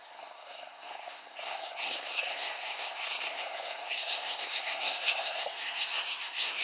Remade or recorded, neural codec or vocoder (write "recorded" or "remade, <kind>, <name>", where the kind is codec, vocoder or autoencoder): remade, codec, SNAC